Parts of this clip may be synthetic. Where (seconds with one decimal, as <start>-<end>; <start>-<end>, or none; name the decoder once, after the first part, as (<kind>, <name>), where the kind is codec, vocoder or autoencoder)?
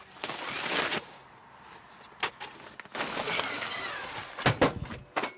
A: none